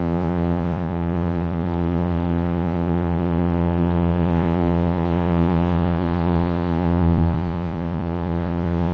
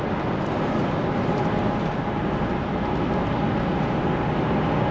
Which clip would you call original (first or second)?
second